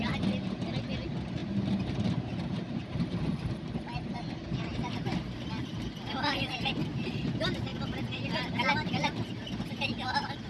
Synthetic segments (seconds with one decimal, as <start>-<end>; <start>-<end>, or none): 1.4-3.5; 4.7-5.7